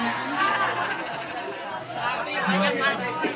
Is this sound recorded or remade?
recorded